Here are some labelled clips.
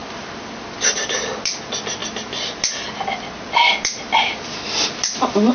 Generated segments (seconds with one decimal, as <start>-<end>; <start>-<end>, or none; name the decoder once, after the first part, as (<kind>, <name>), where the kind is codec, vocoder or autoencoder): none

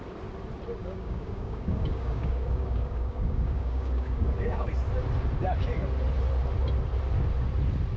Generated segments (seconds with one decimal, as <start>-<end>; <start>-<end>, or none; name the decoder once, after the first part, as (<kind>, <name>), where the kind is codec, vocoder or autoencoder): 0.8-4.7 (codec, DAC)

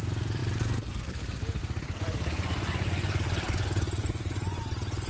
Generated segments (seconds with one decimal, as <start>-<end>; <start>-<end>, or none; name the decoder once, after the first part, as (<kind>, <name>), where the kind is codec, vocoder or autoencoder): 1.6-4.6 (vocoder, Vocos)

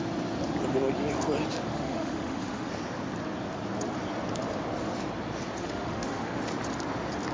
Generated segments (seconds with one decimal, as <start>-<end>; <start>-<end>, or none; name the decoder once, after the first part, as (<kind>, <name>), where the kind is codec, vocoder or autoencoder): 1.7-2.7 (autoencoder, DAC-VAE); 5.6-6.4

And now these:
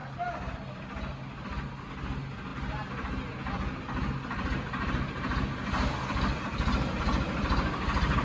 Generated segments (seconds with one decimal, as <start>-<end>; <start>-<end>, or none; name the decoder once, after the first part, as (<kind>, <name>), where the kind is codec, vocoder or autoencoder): none

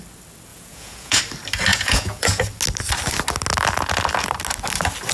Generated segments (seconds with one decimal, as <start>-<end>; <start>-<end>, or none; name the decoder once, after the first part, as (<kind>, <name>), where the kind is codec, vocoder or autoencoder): 0.5-1.2 (vocoder, Vocos); 1.7-2.4

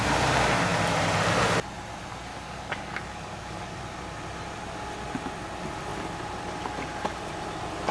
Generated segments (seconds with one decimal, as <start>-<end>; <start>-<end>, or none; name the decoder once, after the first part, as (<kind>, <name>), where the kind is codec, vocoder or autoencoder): 2.3-3.8 (codec, DAC)

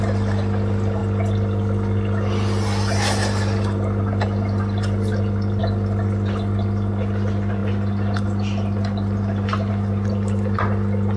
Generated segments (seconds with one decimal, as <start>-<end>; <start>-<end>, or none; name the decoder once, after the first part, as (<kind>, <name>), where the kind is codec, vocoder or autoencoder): none